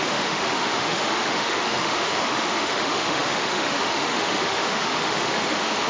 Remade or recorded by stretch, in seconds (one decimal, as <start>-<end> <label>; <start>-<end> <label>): 0.0-5.9 remade

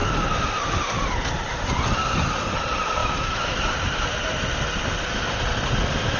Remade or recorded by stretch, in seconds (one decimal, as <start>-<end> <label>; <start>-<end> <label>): 0.0-3.0 recorded; 3.0-3.7 remade; 3.7-6.2 recorded

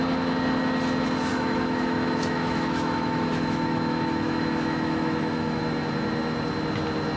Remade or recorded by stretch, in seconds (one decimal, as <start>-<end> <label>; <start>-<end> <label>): 0.0-1.3 recorded; 1.3-5.6 remade; 5.6-7.2 recorded

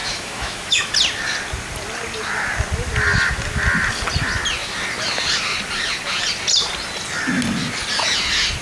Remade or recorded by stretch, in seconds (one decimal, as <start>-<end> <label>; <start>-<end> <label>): 0.0-0.9 remade; 0.9-8.6 recorded